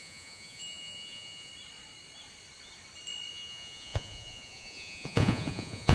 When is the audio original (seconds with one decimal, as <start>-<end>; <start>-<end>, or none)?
1.5-3.3